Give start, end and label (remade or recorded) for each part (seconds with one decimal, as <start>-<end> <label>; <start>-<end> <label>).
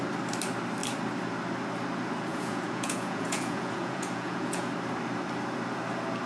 0.0-2.3 recorded; 2.3-4.7 remade; 4.7-6.3 recorded